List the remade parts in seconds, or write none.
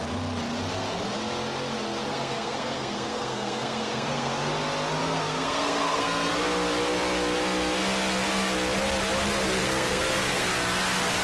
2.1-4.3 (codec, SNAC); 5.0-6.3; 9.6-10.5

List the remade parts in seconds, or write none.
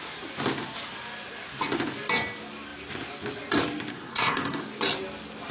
3.9-4.6 (codec, SNAC)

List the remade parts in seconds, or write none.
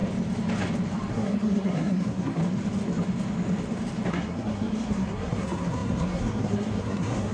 1.1-2.4 (codec, SNAC); 4.1-7.3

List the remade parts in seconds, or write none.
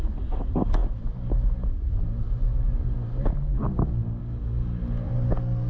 none